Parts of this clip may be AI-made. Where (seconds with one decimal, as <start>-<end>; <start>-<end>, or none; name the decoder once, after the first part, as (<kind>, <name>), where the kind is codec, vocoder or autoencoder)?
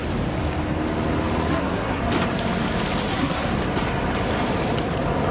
1.5-2.0 (codec, SNAC); 3.1-3.5